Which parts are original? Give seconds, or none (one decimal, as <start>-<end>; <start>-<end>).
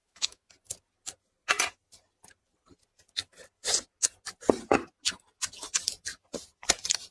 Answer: 0.5-7.1